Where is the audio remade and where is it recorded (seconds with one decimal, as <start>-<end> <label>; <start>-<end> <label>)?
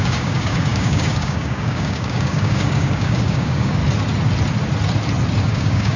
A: 0.0-3.8 remade; 3.8-5.4 recorded; 5.4-6.0 remade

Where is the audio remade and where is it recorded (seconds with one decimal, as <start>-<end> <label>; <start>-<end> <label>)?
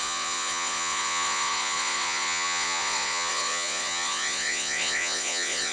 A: 0.0-5.7 remade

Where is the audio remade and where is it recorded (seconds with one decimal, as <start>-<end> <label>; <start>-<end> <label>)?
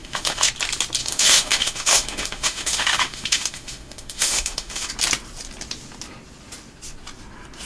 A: 0.0-0.5 remade; 0.5-1.0 recorded; 1.0-4.9 remade; 4.9-7.7 recorded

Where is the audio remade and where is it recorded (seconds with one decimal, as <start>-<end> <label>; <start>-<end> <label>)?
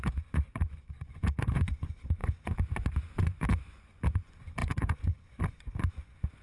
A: 0.0-6.4 remade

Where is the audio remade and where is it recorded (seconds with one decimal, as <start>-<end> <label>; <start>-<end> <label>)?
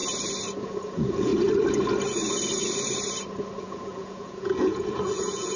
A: 0.0-0.6 recorded; 0.6-1.3 remade; 1.3-3.6 recorded; 3.6-5.6 remade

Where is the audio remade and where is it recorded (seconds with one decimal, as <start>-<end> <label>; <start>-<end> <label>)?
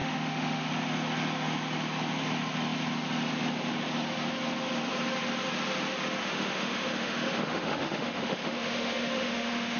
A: 0.0-0.7 remade; 0.7-6.2 recorded; 6.2-9.8 remade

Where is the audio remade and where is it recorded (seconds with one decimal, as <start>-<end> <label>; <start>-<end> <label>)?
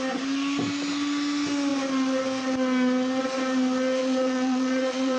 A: 0.0-4.0 recorded; 4.0-5.2 remade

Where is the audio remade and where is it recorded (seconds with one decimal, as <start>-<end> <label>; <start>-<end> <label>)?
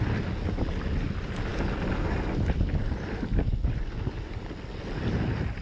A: 0.0-5.6 recorded